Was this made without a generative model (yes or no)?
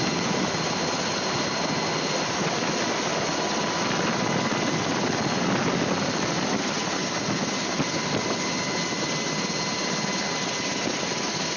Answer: yes